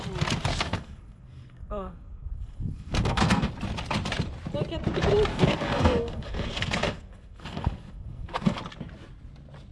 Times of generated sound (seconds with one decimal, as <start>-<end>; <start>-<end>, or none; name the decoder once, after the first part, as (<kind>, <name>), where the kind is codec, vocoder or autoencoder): 0.5-3.5 (codec, SNAC); 5.3-8.6